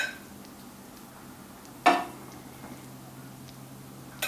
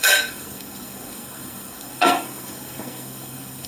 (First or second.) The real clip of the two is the first